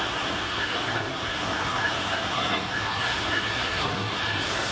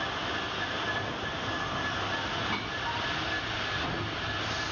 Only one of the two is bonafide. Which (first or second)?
second